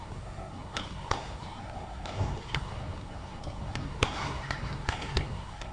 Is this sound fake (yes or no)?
yes